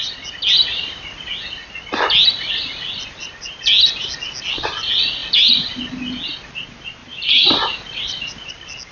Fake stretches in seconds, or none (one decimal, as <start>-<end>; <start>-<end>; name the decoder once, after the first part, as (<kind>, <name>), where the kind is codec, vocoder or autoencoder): 5.2-5.8 (vocoder, BigVGAN v2); 7.0-8.5